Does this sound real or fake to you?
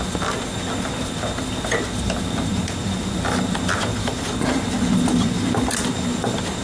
real